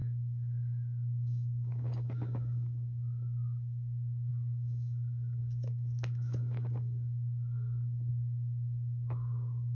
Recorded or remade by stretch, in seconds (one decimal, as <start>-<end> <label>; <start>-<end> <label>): 0.0-9.7 remade